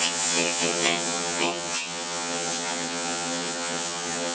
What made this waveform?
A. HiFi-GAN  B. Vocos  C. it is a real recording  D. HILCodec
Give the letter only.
A